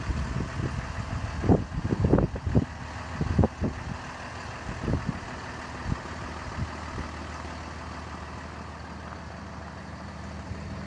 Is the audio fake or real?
real